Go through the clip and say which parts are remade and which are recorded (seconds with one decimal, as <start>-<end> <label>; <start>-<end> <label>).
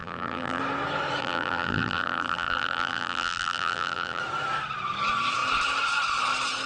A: 0.0-0.6 remade; 0.6-1.2 recorded; 1.2-4.2 remade; 4.2-6.7 recorded